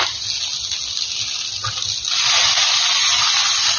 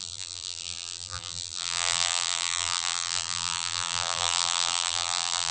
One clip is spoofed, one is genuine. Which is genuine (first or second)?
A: first